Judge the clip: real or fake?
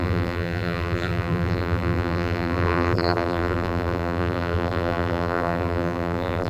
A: fake